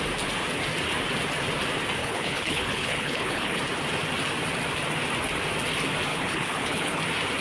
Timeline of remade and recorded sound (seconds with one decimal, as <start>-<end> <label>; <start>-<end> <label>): 0.0-2.0 recorded; 2.0-3.6 remade; 3.6-6.1 recorded; 6.1-7.0 remade; 7.0-7.4 recorded